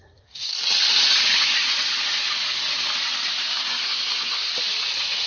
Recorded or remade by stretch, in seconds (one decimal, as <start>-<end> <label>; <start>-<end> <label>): 0.0-0.5 remade; 0.5-3.7 recorded; 3.7-4.5 remade; 4.5-5.3 recorded